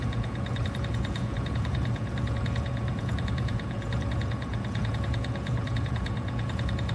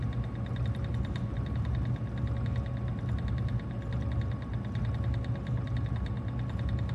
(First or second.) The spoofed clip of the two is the first